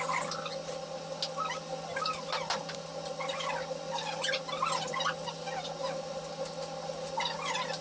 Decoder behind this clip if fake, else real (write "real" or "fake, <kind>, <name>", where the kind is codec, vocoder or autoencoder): real